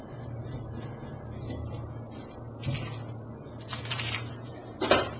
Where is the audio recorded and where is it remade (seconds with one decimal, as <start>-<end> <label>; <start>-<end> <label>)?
0.0-0.6 remade; 0.6-3.7 recorded; 3.7-5.2 remade

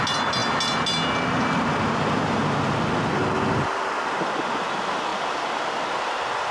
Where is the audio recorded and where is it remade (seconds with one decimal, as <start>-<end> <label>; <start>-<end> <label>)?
0.0-6.5 recorded

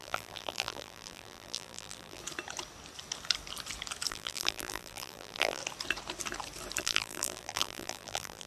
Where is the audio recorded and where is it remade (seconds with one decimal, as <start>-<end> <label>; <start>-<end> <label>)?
0.0-2.2 remade; 2.2-4.1 recorded; 4.1-5.6 remade; 5.6-6.8 recorded; 6.8-8.5 remade